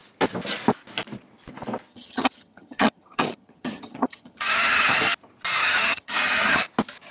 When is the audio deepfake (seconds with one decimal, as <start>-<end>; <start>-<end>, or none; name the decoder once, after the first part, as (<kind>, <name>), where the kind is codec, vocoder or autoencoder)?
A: 1.9-5.0 (vocoder, HiFi-GAN); 5.6-6.6